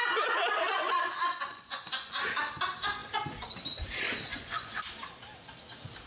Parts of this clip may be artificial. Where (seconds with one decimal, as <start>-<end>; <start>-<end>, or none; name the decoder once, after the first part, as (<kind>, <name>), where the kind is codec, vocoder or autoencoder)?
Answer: 0.7-2.1 (vocoder, Vocos); 4.3-4.9